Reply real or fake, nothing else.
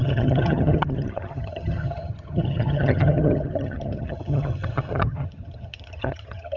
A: fake